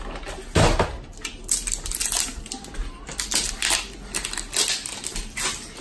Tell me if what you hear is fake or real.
real